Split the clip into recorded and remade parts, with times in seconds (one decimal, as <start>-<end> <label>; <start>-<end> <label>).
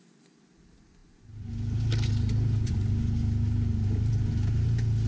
0.0-5.1 recorded